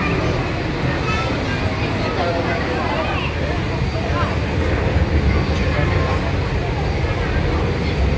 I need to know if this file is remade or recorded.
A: recorded